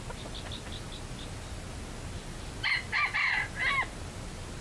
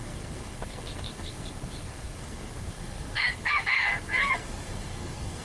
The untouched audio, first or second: first